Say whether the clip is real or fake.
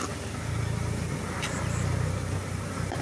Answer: real